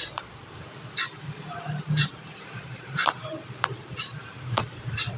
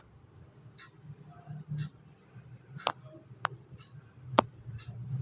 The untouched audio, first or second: second